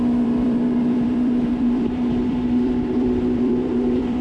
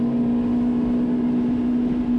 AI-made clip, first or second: first